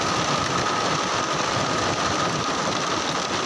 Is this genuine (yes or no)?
yes